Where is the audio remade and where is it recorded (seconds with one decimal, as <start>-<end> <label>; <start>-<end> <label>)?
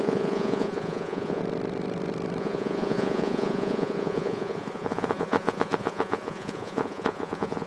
0.0-1.4 remade; 1.4-2.4 recorded; 2.4-7.7 remade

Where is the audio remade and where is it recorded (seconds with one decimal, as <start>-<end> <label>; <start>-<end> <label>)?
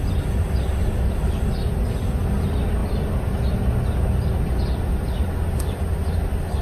0.0-6.6 recorded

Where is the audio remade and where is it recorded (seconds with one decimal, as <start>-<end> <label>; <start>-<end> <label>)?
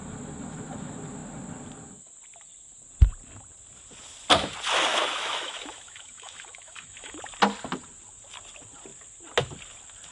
0.0-4.9 recorded; 4.9-7.2 remade; 7.2-10.1 recorded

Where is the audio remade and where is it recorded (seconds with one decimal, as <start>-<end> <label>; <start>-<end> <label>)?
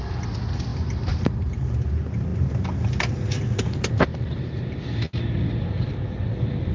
0.0-0.7 recorded; 0.7-1.6 remade; 1.6-4.1 recorded; 4.1-4.8 remade; 4.8-6.7 recorded